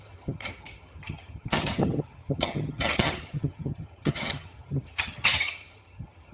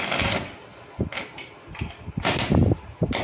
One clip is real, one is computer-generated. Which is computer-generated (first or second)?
first